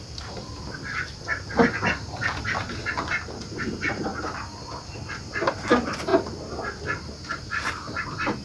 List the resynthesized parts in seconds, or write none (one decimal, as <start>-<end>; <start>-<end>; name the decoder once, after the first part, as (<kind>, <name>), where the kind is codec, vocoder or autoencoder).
0.0-4.1 (vocoder, BigVGAN v2); 4.7-6.1; 7.1-8.4